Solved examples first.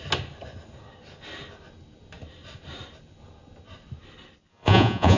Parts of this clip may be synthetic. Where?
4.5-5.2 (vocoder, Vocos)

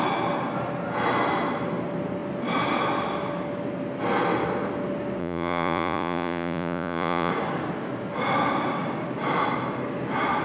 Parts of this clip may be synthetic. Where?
5.2-7.3 (vocoder, Vocos)

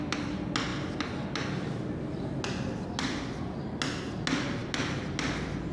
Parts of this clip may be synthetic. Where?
none